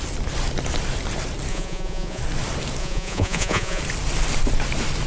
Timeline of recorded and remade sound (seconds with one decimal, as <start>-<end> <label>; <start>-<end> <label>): 0.0-1.5 recorded; 1.5-2.2 remade; 2.2-2.8 recorded; 2.8-3.8 remade; 3.8-5.1 recorded